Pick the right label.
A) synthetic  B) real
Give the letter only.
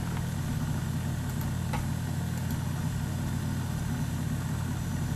B